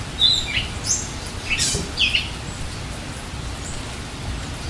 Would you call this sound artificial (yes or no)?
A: no